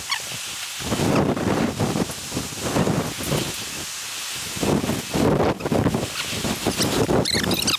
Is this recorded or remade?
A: recorded